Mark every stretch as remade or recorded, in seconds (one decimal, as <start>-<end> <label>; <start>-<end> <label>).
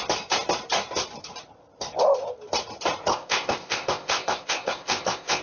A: 0.0-3.1 recorded; 3.1-5.4 remade